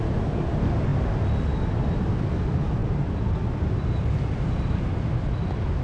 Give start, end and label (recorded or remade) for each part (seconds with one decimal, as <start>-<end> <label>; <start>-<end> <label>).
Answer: 0.0-5.8 recorded